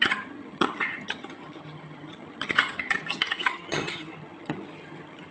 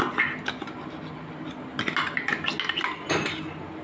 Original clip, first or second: second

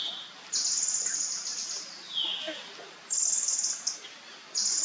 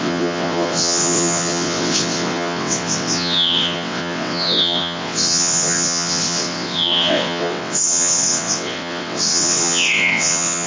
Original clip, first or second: first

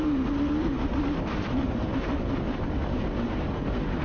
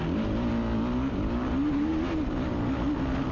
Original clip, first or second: second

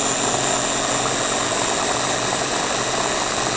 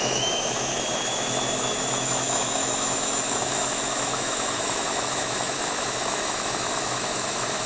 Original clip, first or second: first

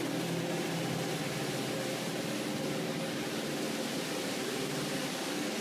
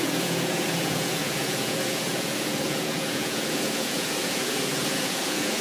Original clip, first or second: first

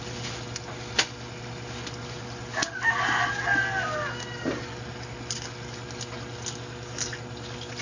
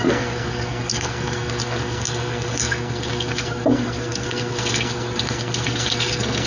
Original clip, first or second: first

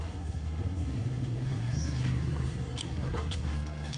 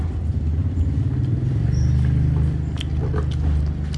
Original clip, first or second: second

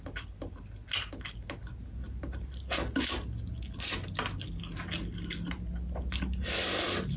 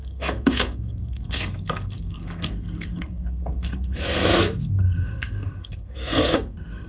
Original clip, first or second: first